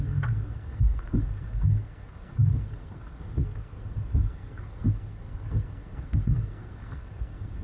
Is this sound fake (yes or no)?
yes